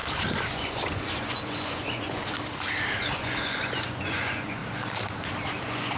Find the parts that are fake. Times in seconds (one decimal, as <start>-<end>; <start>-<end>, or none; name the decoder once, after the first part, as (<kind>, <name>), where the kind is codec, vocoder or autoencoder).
0.5-2.2 (vocoder, Vocos); 3.0-4.6; 5.6-6.0